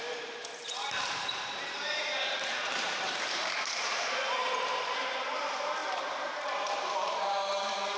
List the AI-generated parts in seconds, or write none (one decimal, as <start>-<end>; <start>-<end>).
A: 0.0-8.0

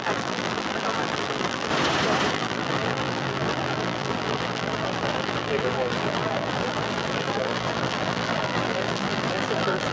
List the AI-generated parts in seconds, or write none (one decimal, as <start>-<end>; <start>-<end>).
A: 0.0-1.7; 2.3-9.9